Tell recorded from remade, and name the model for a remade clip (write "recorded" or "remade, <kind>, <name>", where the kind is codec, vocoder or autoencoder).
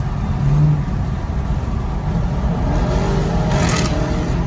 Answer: recorded